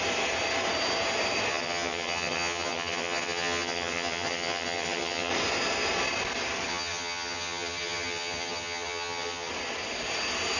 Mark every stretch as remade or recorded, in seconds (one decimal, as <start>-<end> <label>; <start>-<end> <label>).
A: 0.0-1.5 recorded; 1.5-5.3 remade; 5.3-6.7 recorded; 6.7-9.5 remade; 9.5-10.6 recorded